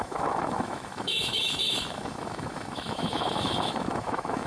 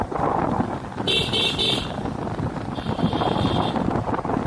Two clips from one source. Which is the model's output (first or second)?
first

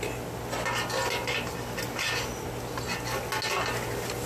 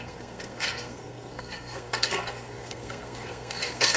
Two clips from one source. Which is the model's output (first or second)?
second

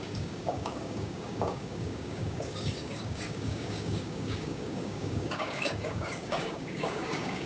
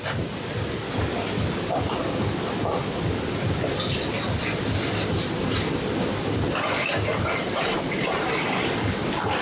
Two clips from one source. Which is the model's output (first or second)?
first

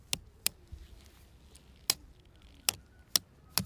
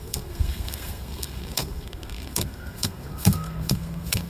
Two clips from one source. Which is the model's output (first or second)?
second